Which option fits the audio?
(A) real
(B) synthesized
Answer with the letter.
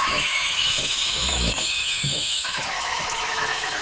B